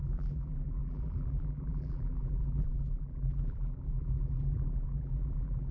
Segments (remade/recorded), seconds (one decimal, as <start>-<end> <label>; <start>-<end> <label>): 0.0-5.7 remade